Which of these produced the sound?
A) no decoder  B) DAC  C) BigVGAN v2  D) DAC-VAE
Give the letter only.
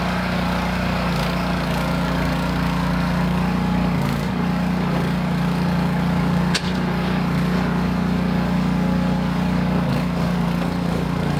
B